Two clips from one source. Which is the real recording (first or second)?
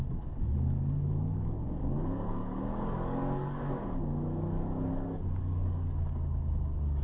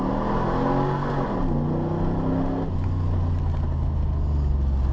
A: second